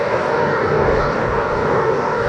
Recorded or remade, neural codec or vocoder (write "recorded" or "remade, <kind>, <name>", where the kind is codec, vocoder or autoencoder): remade, codec, DAC